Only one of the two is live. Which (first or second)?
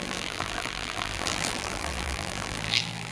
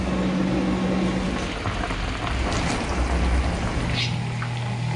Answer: second